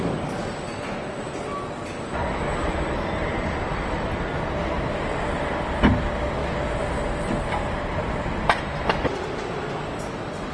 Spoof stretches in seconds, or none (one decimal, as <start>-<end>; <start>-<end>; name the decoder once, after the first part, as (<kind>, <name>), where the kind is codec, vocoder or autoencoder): none